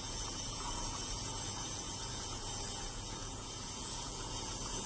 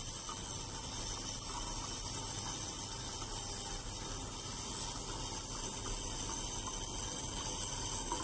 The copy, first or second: first